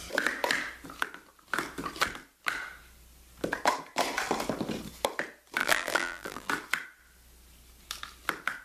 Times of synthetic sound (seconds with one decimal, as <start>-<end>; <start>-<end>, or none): 5.6-6.5